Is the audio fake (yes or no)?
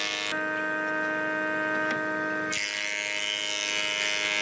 no